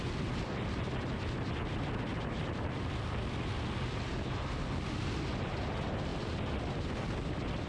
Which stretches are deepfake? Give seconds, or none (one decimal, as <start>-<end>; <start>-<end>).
none